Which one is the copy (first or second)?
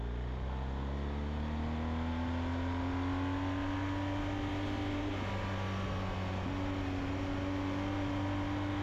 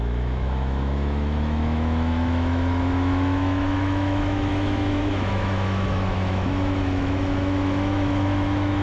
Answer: second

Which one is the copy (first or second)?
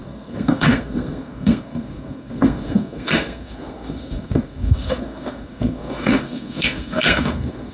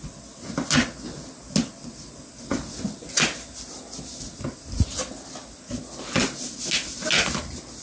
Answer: first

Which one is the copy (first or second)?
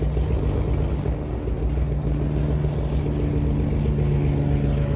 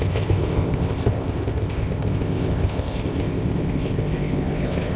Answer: second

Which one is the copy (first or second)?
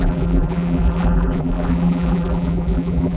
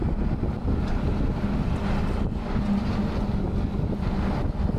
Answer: first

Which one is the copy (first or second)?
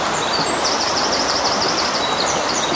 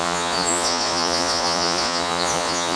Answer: second